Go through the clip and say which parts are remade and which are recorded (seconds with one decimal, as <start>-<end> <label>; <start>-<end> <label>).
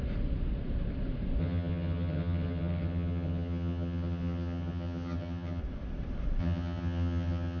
0.0-1.4 recorded; 1.4-5.6 remade; 5.6-6.4 recorded; 6.4-7.6 remade